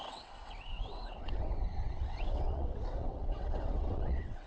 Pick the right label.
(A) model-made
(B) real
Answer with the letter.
A